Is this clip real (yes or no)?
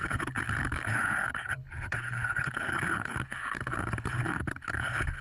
no